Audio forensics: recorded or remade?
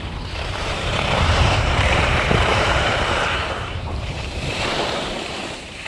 remade